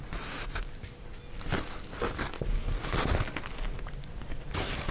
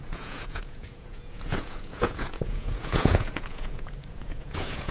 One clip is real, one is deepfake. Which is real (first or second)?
first